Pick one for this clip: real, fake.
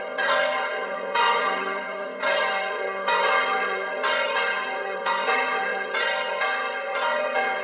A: fake